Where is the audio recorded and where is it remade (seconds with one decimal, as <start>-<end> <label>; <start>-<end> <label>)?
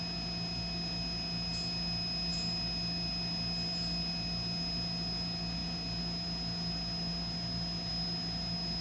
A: 0.0-8.8 recorded